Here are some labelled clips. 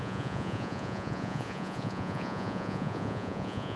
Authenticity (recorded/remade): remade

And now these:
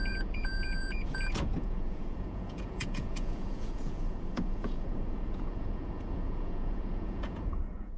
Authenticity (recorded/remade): remade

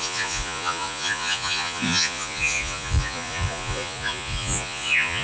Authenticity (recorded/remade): remade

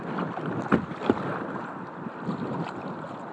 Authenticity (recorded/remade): recorded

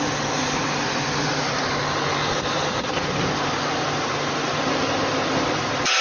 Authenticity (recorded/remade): recorded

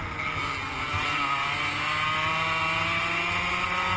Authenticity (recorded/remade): recorded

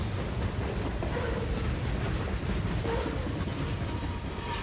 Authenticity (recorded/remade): recorded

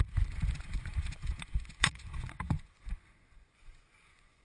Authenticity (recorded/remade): remade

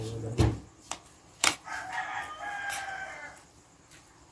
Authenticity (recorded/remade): recorded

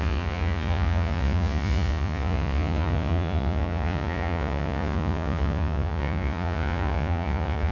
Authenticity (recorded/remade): remade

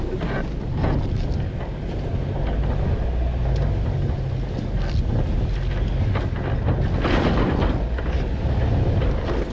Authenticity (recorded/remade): recorded